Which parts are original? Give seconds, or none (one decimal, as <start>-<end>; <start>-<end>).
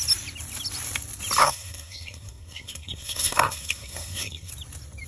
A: 0.0-1.4; 4.5-5.1